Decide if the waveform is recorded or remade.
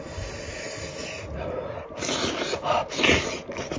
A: recorded